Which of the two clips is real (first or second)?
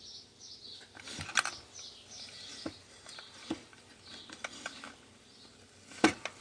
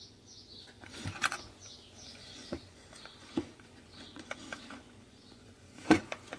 first